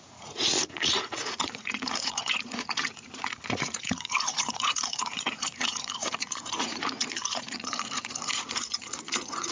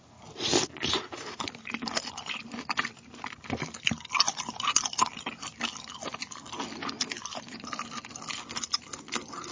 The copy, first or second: first